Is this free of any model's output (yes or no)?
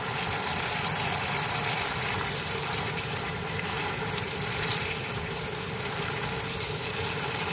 no